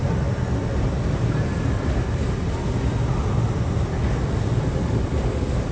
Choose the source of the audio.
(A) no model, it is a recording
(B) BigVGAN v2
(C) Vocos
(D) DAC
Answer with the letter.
A